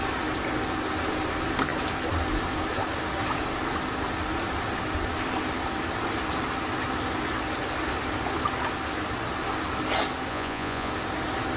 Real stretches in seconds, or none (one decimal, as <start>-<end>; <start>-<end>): 0.0-10.3; 10.9-11.6